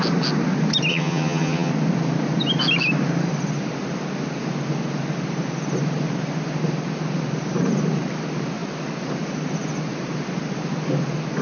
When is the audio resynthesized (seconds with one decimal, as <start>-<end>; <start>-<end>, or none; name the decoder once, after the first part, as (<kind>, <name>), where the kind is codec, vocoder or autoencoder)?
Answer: 0.9-1.7 (vocoder, HiFi-GAN)